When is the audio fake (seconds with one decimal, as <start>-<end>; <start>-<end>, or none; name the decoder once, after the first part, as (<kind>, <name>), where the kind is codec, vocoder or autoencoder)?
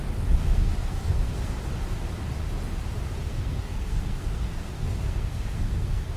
0.4-1.6 (codec, SNAC); 3.2-6.2